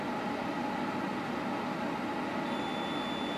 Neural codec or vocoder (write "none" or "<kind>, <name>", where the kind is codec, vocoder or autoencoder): none